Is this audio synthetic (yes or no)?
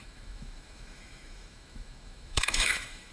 yes